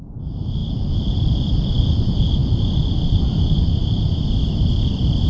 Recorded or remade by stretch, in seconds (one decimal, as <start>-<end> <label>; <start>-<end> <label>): 0.0-3.8 remade; 3.8-4.6 recorded; 4.6-5.3 remade

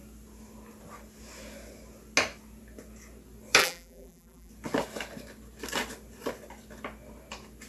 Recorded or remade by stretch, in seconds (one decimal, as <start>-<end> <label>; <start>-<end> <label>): 0.0-3.6 recorded; 3.6-4.5 remade; 4.5-7.7 recorded

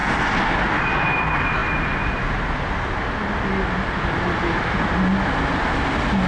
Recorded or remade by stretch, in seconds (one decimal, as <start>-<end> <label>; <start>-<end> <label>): 0.0-6.3 recorded